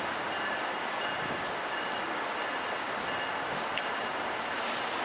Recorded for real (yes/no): yes